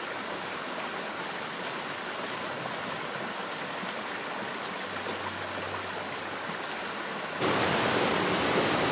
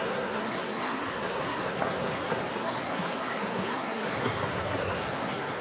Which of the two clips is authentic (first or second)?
first